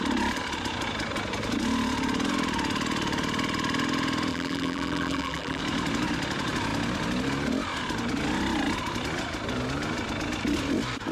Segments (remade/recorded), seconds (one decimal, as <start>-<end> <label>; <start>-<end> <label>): 0.0-4.3 recorded; 4.3-5.6 remade; 5.6-11.1 recorded